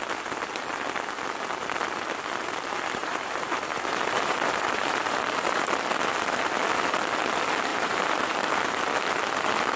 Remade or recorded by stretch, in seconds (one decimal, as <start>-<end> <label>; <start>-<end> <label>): 0.0-3.0 recorded; 3.0-5.7 remade; 5.7-7.7 recorded; 7.7-8.5 remade; 8.5-9.8 recorded